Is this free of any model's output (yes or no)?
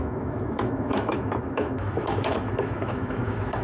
no